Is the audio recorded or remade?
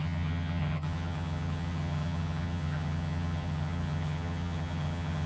remade